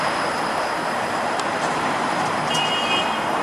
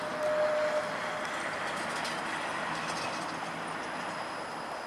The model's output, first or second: first